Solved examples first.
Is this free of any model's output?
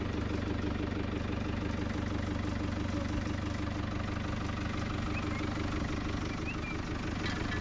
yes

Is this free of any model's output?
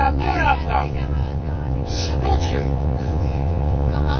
no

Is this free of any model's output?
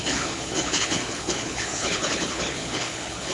no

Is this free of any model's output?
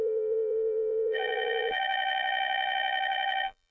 no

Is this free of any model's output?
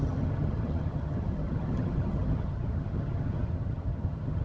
no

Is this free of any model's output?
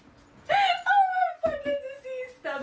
yes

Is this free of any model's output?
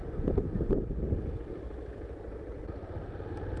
yes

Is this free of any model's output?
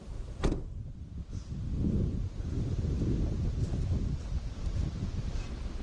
no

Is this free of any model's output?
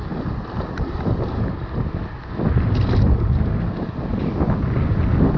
yes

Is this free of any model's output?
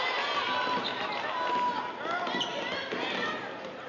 yes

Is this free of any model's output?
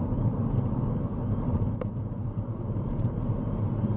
yes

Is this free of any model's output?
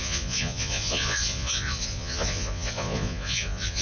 no